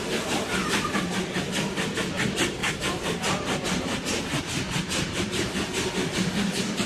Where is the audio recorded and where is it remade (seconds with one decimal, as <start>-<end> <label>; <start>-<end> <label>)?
0.0-2.6 recorded; 2.6-5.9 remade; 5.9-6.9 recorded